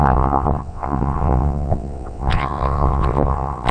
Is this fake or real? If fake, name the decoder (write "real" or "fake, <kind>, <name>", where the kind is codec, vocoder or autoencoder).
fake, vocoder, WaveNeXt